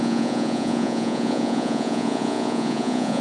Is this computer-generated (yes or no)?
yes